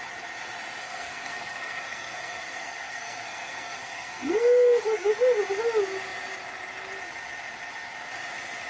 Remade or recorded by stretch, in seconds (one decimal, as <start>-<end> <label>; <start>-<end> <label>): 0.0-0.8 recorded; 0.8-5.1 remade; 5.1-8.7 recorded